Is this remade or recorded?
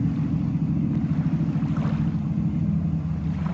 recorded